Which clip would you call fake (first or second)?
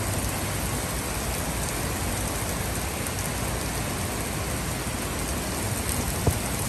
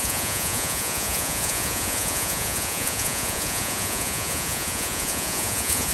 second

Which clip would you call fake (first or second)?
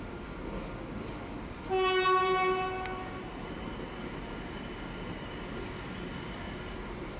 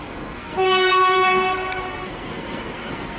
second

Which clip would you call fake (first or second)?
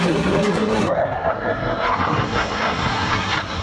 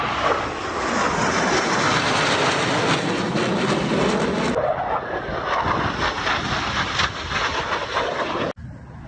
first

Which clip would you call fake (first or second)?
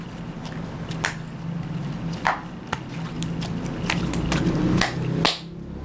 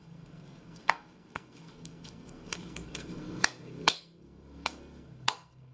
second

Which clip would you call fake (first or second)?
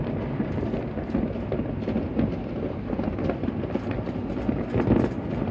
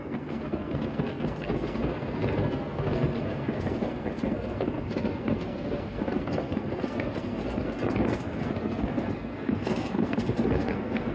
second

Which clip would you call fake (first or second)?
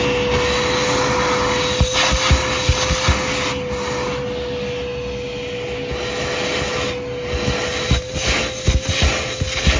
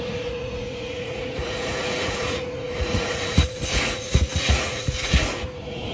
second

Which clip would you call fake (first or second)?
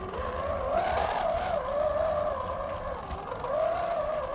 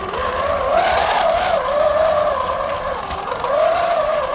second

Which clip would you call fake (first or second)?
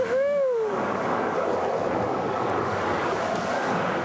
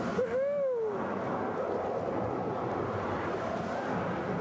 first